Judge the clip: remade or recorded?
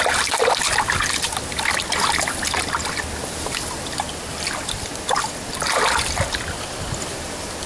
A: recorded